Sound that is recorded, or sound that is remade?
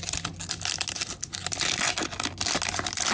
recorded